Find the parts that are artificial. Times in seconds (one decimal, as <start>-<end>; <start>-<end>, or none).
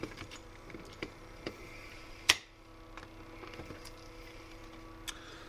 0.0-0.4; 1.0-2.7; 3.6-4.6; 5.1-5.5